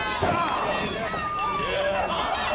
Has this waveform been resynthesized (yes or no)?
no